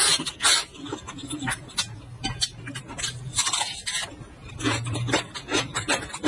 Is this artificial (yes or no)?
no